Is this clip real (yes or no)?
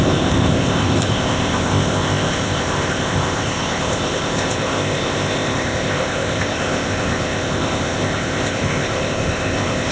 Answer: no